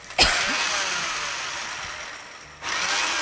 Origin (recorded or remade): recorded